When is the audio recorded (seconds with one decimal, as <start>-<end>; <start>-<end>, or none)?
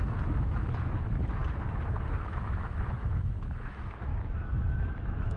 1.4-2.2; 4.1-4.9